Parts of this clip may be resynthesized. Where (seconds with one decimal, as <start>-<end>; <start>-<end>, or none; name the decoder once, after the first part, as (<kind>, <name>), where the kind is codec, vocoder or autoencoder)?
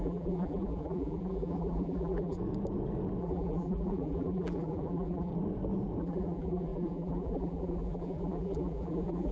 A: 0.0-2.4 (vocoder, BigVGAN v2); 3.2-5.3; 6.0-9.3